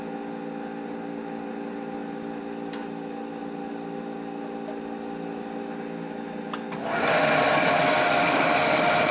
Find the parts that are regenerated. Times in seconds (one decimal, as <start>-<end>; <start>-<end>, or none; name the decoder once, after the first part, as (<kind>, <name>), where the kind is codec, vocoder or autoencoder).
none